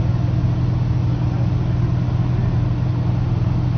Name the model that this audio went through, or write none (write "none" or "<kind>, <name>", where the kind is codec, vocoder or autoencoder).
none